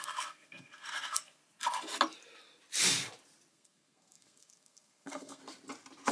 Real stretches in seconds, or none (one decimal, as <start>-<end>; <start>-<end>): 1.4-3.5; 5.4-6.1